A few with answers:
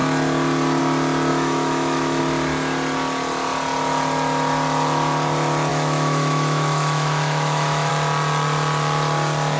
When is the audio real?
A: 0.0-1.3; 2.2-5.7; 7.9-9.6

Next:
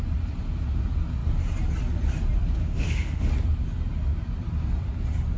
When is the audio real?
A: 0.0-2.6; 3.3-5.4

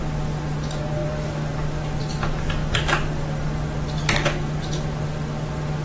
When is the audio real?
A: 0.0-5.8

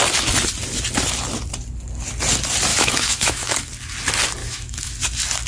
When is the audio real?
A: 0.0-2.7; 3.7-4.4; 4.9-5.5

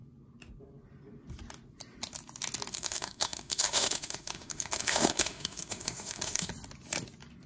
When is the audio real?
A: 0.0-2.7; 6.5-7.5

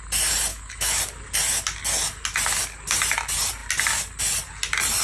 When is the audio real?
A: 0.0-0.5; 1.0-5.0

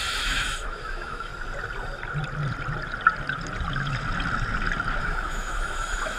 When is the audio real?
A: 1.3-5.0

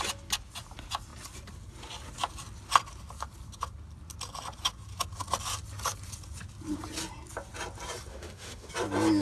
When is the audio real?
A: 0.0-8.1; 8.7-9.2